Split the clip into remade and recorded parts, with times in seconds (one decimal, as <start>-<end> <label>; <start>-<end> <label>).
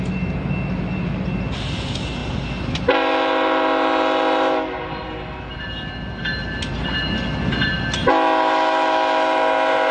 0.0-9.9 recorded